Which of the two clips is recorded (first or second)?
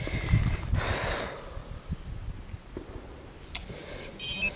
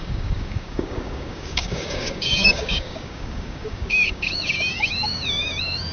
first